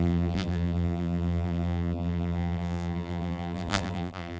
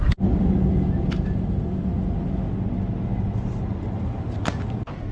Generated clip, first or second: first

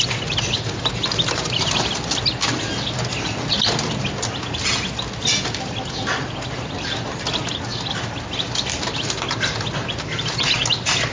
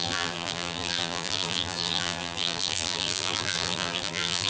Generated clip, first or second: second